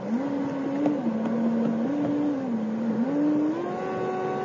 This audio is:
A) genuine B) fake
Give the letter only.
A